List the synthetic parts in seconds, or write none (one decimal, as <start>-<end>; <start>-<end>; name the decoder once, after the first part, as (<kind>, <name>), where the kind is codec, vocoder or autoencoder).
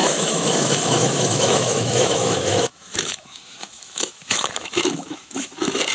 0.0-5.9 (autoencoder, DAC-VAE)